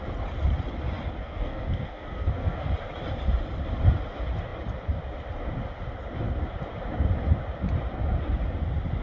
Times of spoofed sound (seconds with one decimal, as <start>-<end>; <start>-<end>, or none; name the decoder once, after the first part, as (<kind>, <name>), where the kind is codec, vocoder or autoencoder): 1.2-2.7 (codec, SNAC)